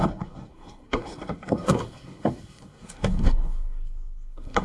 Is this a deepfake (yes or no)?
yes